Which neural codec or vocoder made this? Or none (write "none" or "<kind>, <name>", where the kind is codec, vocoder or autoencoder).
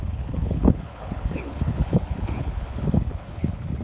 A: codec, HILCodec